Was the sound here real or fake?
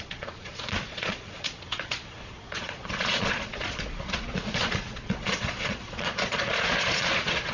fake